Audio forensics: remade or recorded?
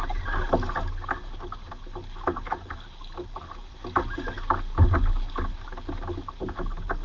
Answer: recorded